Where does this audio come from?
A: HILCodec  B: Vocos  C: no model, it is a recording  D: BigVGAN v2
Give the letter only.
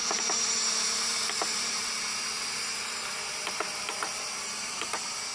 D